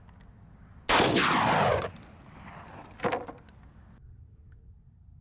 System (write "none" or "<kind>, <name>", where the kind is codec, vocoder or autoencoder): none